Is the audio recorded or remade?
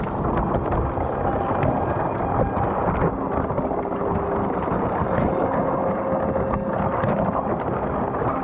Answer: recorded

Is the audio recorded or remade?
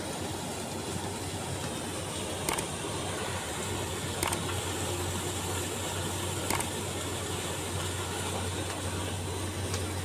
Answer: recorded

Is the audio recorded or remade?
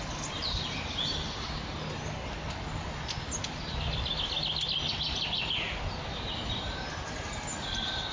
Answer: recorded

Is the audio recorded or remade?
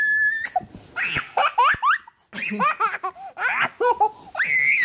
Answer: recorded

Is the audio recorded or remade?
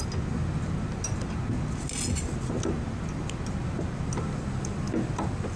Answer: recorded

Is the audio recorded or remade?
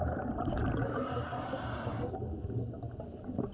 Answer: recorded